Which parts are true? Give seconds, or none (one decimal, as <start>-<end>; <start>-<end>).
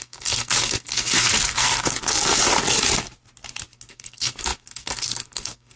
2.3-3.9